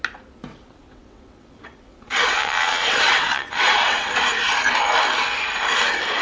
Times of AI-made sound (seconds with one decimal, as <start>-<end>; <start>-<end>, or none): 0.5-4.2